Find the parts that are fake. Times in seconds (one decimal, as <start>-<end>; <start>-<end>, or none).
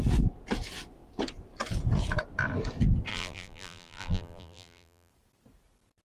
3.1-5.1